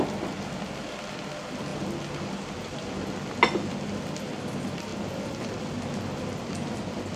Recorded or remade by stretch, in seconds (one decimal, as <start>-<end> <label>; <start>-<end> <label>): 0.0-7.2 recorded